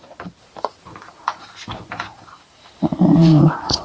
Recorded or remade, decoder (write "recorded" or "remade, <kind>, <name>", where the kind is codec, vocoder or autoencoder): remade, vocoder, BigVGAN v2